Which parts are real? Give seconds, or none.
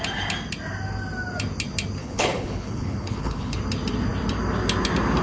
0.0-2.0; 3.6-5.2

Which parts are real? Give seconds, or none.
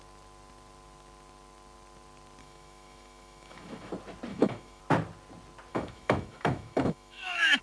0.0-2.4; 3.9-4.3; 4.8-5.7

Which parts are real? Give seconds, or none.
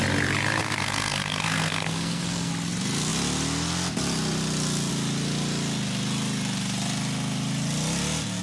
0.0-0.6; 2.5-8.4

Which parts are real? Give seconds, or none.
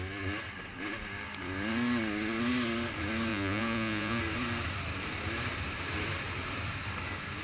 0.0-3.3; 4.2-7.4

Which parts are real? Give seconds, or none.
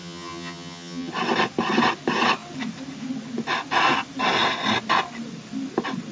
1.1-6.1